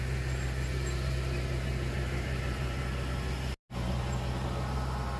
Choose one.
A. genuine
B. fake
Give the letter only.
A